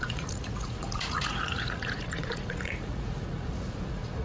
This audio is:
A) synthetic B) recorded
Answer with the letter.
A